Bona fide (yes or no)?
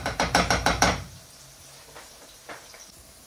no